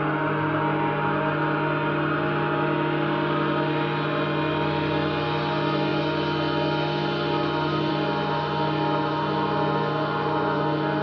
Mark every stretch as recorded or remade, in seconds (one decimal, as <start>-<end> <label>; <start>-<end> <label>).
0.0-11.0 recorded